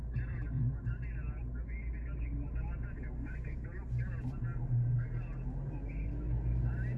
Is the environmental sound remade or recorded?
recorded